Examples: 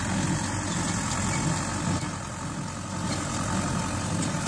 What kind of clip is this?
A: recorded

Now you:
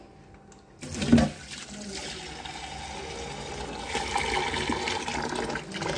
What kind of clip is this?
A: recorded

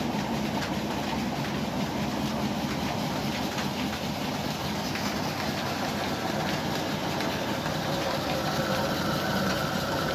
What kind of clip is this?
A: recorded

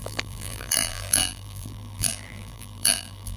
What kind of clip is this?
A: remade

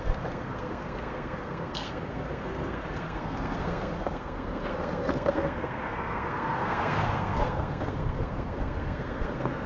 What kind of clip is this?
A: remade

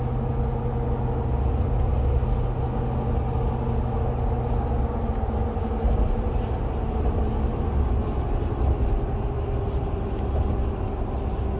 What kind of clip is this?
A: recorded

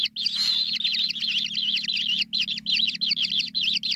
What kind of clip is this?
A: recorded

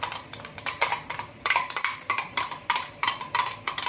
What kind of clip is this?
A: remade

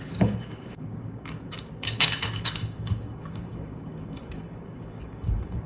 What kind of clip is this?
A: remade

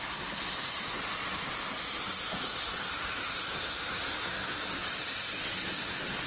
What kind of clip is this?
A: recorded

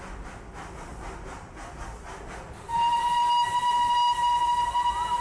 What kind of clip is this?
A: recorded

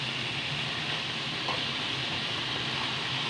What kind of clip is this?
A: recorded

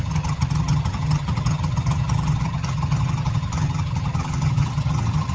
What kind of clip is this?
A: remade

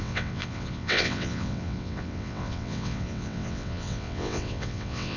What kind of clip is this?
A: remade